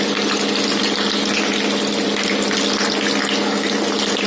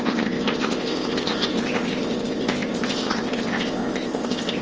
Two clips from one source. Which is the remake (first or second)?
second